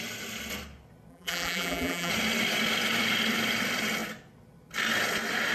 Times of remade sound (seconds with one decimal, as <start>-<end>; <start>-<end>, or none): 1.1-2.1

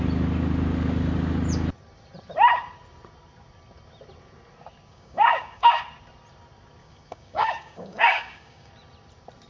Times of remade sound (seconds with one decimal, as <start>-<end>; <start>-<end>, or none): 4.9-5.8; 6.8-8.7

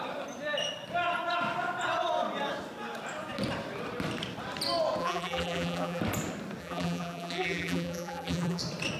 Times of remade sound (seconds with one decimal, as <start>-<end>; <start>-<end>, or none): 5.0-6.0; 6.6-8.6

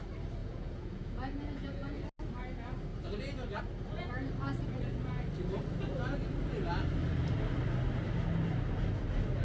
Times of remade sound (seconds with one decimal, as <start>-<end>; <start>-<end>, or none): 0.4-2.0

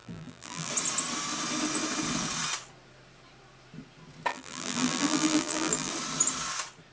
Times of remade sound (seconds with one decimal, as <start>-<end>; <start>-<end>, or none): 0.0-0.7; 4.3-5.9

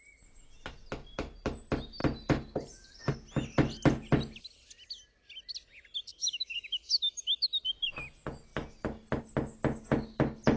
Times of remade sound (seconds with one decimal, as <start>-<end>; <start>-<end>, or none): 6.1-7.5

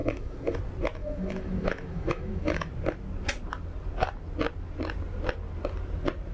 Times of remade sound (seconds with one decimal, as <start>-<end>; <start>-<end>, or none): 0.0-0.6; 1.0-2.7